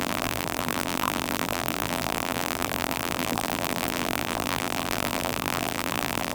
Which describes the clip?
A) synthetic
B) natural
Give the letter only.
A